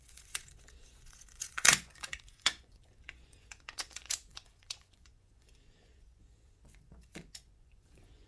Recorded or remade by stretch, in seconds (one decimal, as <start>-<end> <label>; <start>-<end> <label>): 0.0-8.3 remade

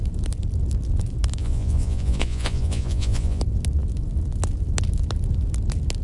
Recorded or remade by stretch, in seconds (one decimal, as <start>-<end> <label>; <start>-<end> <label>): 0.0-1.4 recorded; 1.4-3.4 remade; 3.4-6.0 recorded

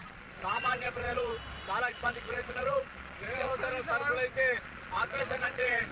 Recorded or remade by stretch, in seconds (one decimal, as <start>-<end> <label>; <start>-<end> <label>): 0.0-1.3 remade; 1.3-1.9 recorded; 1.9-3.5 remade; 3.5-4.5 recorded; 4.5-5.9 remade

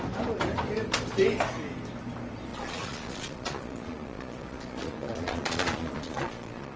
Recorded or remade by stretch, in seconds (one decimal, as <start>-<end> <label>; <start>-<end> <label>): 0.0-2.5 recorded; 2.5-6.8 remade

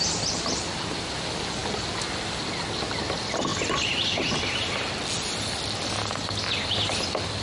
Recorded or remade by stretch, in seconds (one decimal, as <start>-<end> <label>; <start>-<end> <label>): 0.0-7.4 recorded

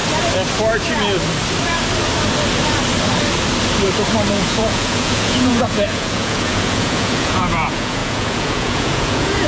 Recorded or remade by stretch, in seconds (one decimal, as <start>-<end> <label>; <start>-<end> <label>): 0.0-4.3 recorded; 4.3-9.5 remade